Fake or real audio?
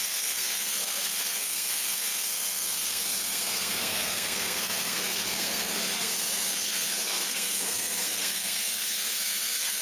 fake